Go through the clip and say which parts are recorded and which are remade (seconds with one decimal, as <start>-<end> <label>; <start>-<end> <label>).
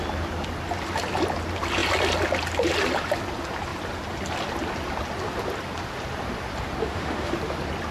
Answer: 0.0-6.8 recorded; 6.8-7.3 remade; 7.3-7.9 recorded